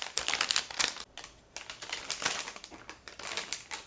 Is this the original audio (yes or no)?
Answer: yes